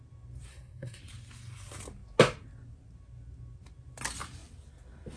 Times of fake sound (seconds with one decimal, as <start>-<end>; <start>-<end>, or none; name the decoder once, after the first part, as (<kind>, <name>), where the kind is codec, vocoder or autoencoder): 0.5-1.0 (codec, SNAC)